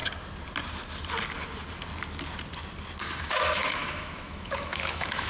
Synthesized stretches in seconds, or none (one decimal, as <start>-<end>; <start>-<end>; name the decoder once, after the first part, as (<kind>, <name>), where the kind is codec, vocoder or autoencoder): 3.2-5.3 (autoencoder, DAC-VAE)